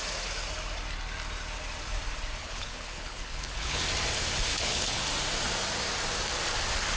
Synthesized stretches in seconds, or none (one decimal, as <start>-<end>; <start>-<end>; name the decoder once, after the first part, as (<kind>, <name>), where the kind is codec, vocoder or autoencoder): 2.4-3.8 (codec, HILCodec); 4.5-5.0